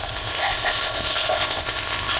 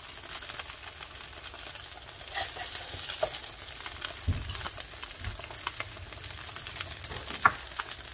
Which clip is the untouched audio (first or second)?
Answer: second